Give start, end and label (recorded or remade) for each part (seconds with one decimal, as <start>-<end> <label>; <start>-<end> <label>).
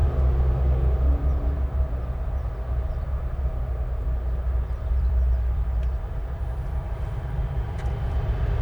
0.0-4.9 recorded; 4.9-8.6 remade